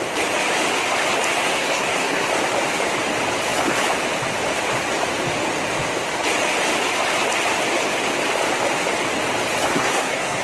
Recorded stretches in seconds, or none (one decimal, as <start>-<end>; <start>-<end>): 0.0-1.4; 2.3-9.7